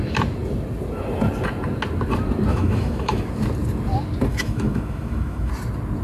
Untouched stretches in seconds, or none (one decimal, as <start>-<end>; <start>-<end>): 0.0-2.5; 3.3-4.3; 5.5-6.0